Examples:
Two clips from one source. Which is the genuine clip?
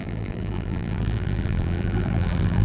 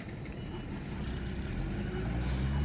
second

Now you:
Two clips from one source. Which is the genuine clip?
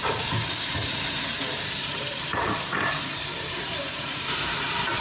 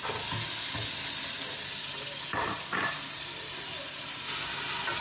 second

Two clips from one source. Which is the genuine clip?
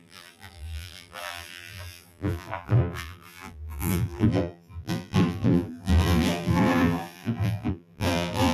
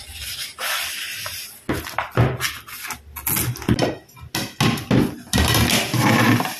second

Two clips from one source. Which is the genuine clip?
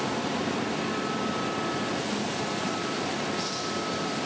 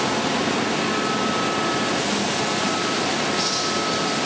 second